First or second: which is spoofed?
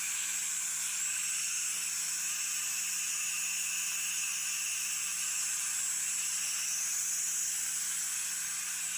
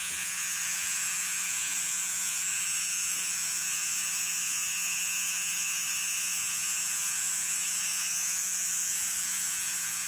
second